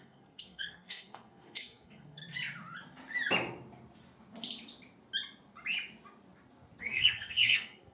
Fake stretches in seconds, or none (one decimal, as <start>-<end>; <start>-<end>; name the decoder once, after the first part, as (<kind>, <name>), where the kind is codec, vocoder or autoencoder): 0.0-2.2 (codec, SNAC); 6.8-7.9